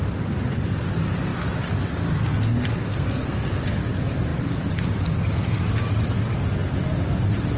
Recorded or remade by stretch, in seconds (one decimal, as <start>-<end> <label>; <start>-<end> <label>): 0.0-2.9 recorded; 2.9-3.6 remade; 3.6-7.6 recorded